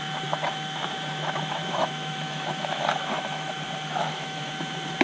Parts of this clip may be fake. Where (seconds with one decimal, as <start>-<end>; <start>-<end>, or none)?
0.5-3.5; 3.9-4.5